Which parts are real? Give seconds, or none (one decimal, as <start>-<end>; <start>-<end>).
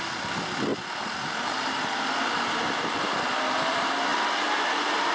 0.0-5.1